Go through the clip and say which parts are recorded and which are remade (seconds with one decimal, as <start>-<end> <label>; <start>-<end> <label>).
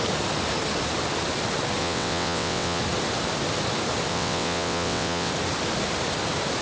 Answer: 0.0-1.8 recorded; 1.8-2.8 remade; 2.8-4.1 recorded; 4.1-5.3 remade; 5.3-6.6 recorded